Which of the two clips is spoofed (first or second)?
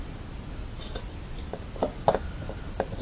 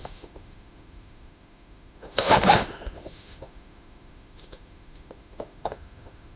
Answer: second